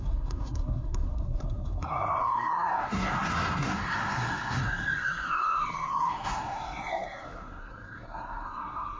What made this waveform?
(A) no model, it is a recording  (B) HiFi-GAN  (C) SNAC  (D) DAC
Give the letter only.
C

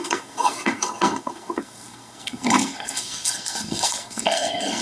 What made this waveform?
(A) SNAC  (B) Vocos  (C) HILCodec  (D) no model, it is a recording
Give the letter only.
A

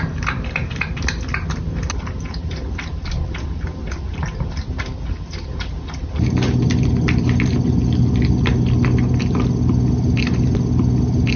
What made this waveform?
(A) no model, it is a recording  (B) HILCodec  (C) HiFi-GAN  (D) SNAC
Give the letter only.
A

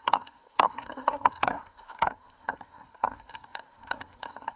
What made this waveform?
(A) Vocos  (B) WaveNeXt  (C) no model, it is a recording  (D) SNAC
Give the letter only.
D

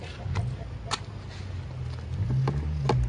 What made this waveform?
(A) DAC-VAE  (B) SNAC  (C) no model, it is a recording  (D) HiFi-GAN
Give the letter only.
C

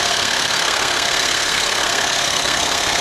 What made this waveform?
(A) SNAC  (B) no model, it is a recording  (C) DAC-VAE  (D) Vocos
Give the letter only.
A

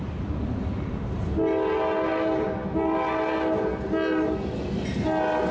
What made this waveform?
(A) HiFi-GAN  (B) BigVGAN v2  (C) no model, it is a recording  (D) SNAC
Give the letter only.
C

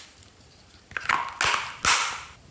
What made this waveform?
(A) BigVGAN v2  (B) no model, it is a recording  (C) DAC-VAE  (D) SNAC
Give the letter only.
B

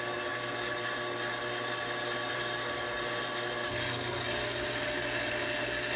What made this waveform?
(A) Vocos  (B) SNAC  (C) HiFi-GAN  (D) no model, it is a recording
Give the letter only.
D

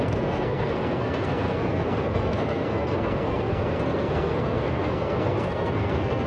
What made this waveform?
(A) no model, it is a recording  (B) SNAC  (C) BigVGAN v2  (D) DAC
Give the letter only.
B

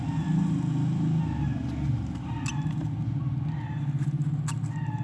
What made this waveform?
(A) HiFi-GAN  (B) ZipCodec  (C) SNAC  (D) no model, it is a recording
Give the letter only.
D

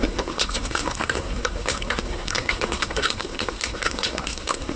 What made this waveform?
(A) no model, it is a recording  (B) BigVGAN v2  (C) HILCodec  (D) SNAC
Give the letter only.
D